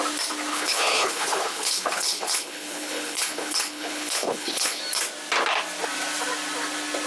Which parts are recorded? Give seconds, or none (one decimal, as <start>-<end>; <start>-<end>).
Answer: 0.0-0.5; 4.8-7.1